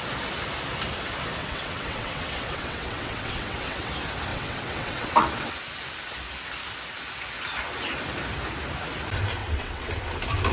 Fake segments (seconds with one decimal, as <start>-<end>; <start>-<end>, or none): 1.4-3.9; 4.3-5.5; 9.4-9.9